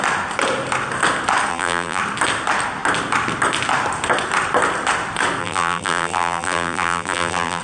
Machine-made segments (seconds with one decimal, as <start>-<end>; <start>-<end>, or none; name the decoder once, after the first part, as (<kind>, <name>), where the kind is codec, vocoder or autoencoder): 1.5-2.0 (vocoder, BigVGAN v2); 5.4-7.6